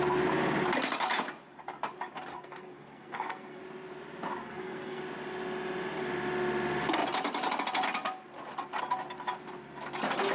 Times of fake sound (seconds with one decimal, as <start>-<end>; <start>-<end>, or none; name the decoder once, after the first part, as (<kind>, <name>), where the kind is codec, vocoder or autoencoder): 2.3-3.6 (codec, SNAC); 4.4-5.0